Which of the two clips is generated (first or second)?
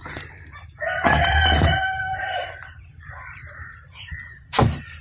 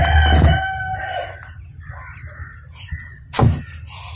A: first